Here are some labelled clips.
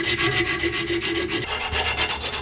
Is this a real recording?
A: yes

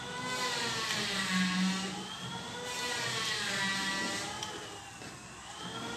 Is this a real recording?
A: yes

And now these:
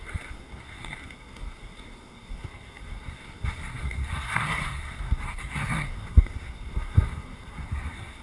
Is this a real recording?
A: no